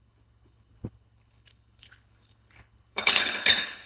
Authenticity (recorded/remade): remade